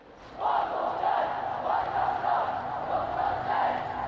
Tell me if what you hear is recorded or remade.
recorded